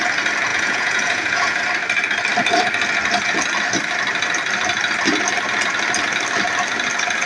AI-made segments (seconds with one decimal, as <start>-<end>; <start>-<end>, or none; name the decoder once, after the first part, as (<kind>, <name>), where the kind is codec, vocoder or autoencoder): 0.5-1.6 (vocoder, Vocos)